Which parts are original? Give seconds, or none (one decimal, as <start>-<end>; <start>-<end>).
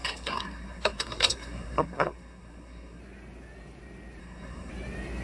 3.0-4.2; 4.7-5.2